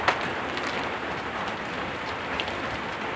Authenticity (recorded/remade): recorded